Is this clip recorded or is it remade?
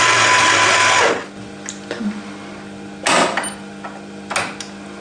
recorded